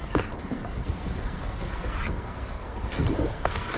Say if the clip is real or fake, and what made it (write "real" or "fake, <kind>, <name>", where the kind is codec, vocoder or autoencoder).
fake, codec, SNAC